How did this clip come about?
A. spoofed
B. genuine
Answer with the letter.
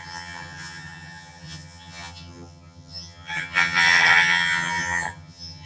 A